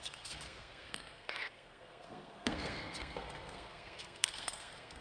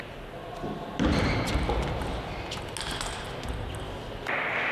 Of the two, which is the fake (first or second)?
first